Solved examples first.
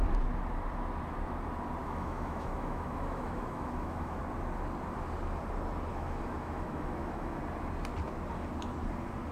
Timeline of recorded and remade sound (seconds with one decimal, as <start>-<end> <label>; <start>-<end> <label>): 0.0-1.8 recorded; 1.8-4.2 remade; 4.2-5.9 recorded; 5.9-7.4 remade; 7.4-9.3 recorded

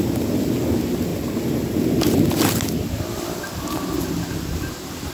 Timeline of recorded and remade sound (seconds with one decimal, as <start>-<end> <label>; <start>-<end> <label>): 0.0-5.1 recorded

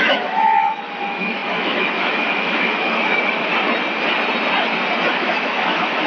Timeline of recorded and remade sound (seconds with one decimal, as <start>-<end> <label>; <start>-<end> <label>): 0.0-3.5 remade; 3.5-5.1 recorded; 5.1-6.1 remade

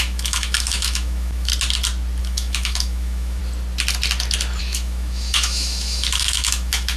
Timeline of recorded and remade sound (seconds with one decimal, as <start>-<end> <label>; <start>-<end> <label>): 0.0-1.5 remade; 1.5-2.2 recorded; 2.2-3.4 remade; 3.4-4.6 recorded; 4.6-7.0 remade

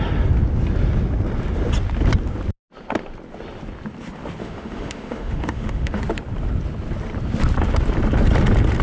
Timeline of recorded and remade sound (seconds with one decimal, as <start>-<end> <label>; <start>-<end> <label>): 0.0-4.4 recorded; 4.4-6.0 remade; 6.0-8.8 recorded

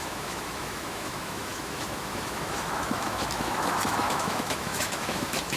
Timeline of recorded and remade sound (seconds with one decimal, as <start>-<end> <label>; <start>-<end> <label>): 0.0-5.6 remade